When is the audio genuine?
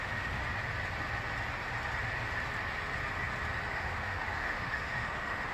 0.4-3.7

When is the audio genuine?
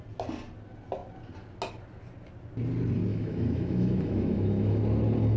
0.0-3.1; 4.8-5.4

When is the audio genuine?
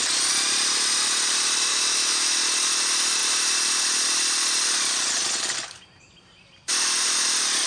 0.0-1.7; 2.4-7.7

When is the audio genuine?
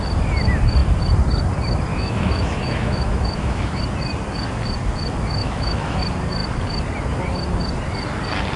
0.0-1.9; 3.8-5.4; 6.0-8.6